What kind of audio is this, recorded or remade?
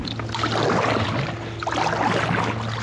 recorded